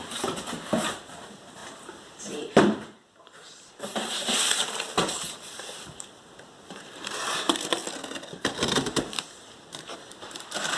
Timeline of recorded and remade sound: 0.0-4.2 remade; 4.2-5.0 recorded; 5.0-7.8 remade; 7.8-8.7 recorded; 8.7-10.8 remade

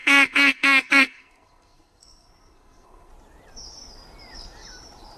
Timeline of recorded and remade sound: 0.0-3.1 remade; 3.1-5.2 recorded

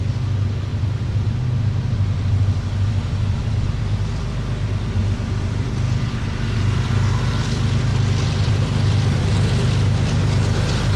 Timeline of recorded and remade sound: 0.0-0.7 recorded; 0.7-3.7 remade; 3.7-5.0 recorded; 5.0-6.9 remade; 6.9-7.9 recorded; 7.9-9.3 remade; 9.3-11.0 recorded

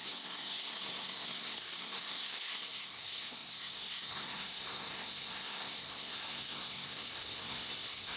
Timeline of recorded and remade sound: 0.0-8.2 remade

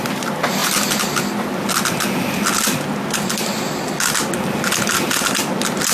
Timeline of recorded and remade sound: 0.0-5.9 recorded

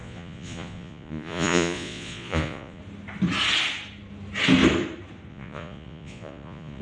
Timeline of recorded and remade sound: 0.0-2.8 remade; 2.8-5.3 recorded; 5.3-6.8 remade